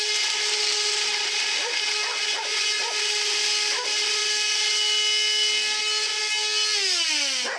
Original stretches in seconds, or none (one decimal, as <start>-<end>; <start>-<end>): 0.0-2.2; 2.8-7.6